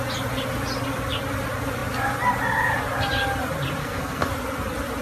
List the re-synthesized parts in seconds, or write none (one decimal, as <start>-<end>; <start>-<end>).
3.8-4.3